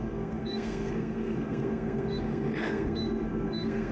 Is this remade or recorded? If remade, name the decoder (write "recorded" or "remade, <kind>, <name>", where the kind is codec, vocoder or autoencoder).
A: remade, codec, SNAC